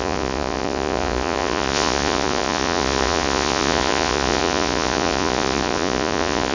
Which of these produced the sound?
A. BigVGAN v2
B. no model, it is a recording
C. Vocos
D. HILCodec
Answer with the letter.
C